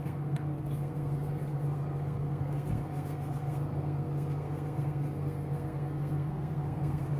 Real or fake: fake